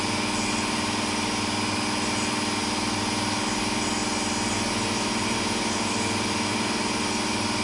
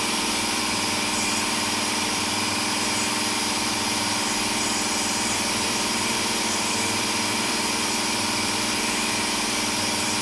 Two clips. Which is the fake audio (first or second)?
second